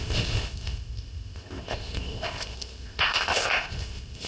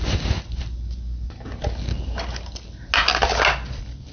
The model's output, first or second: first